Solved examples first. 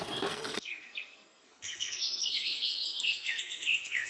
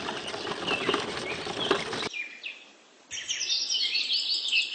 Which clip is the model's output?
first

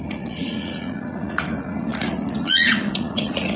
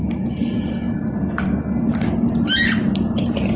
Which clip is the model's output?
first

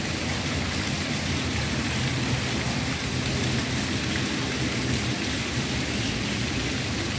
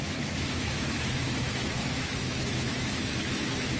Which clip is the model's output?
second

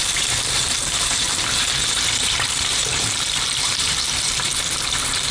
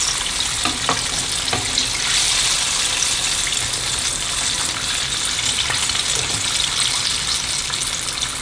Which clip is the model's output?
first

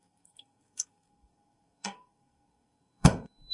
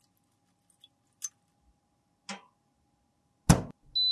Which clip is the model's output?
first